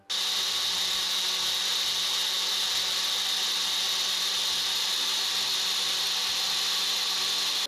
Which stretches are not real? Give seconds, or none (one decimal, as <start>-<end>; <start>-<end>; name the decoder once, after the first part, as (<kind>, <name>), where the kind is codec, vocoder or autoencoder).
none